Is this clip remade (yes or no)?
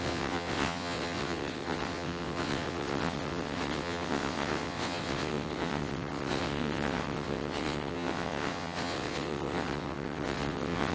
yes